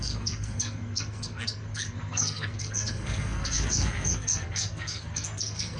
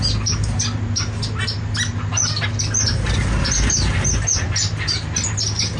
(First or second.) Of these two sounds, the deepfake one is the first